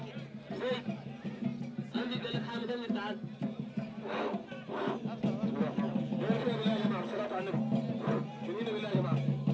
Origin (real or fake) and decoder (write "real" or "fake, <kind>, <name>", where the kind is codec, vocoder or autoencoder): real